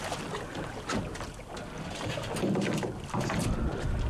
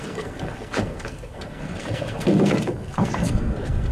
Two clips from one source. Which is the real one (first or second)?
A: first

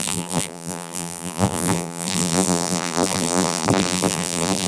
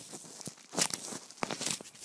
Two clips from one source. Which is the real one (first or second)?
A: second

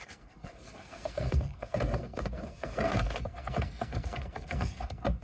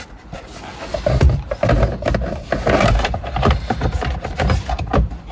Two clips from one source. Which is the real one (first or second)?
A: second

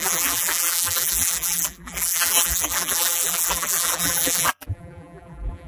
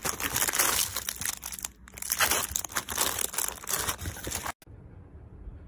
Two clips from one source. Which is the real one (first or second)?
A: second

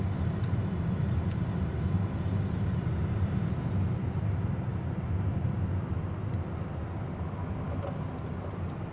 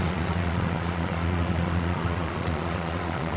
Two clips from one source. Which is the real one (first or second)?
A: first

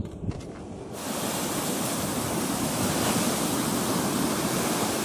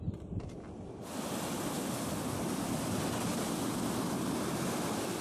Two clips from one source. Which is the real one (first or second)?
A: second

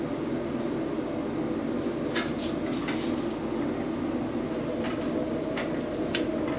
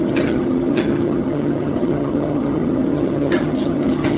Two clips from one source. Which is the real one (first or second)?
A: first